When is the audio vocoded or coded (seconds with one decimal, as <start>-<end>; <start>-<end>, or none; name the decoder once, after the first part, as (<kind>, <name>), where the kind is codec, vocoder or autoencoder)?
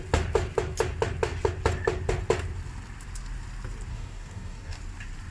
3.9-4.8 (codec, DAC)